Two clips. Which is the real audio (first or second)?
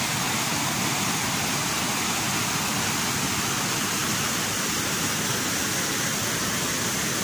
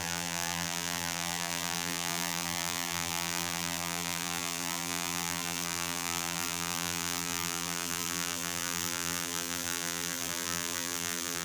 first